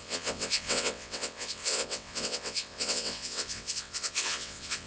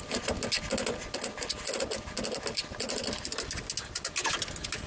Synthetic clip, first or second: first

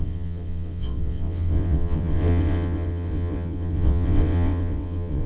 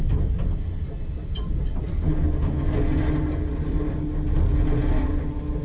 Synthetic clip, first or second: first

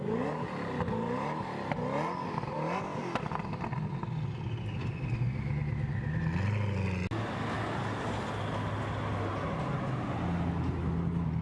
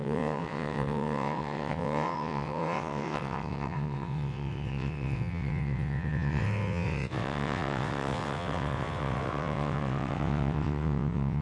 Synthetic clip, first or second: second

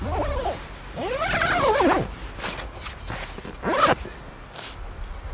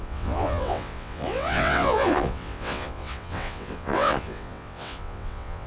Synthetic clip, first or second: second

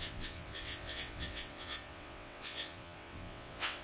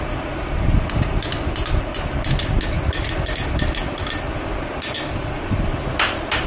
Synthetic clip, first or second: first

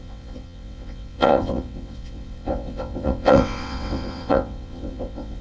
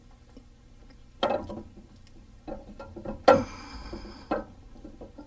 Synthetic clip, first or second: first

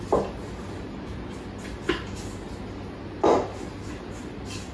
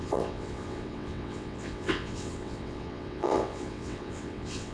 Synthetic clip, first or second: second